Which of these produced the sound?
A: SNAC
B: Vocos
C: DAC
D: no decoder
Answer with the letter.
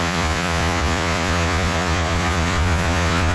B